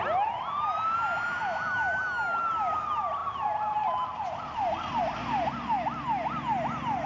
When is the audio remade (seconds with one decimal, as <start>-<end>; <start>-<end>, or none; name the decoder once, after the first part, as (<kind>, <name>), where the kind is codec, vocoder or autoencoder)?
none